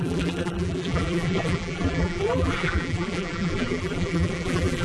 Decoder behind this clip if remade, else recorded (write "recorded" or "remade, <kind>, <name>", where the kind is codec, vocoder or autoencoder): remade, vocoder, BigVGAN v2